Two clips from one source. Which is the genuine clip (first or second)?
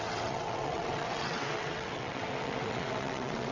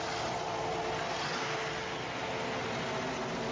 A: second